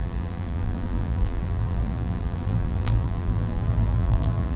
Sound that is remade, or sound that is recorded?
remade